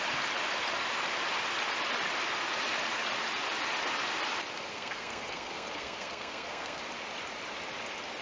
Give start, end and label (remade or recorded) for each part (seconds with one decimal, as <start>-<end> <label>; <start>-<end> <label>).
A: 0.0-4.7 recorded; 4.7-6.8 remade; 6.8-8.2 recorded